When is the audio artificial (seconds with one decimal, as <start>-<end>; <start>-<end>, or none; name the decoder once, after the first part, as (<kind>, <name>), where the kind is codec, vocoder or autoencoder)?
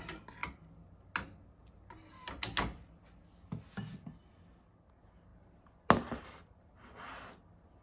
none